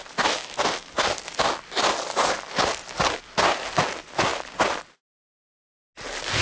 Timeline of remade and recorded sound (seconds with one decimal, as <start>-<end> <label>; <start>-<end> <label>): 0.0-6.4 recorded